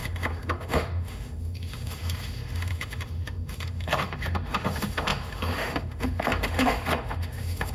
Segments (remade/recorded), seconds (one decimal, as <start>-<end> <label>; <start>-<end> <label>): 0.0-7.7 remade